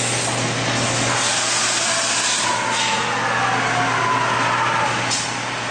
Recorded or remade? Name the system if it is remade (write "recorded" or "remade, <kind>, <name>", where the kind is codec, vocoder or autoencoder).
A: recorded